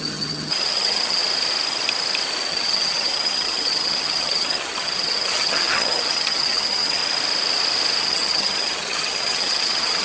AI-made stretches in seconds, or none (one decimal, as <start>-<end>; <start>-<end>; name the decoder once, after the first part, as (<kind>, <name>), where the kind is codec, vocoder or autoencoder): 0.0-1.2 (vocoder, HiFi-GAN); 2.5-7.0; 8.0-10.0